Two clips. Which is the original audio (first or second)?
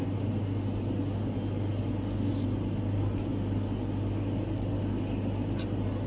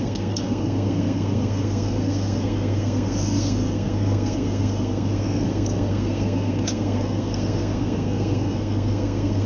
first